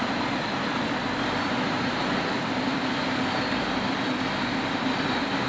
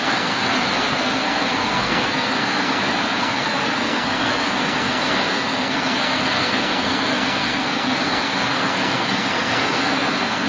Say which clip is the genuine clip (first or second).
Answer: first